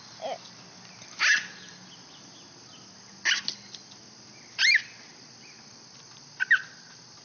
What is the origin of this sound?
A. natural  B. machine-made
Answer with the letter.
A